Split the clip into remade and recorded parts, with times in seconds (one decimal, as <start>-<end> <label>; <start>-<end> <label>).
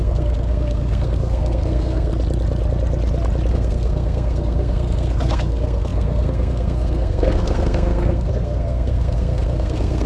0.0-2.1 remade; 2.1-3.5 recorded; 3.5-10.1 remade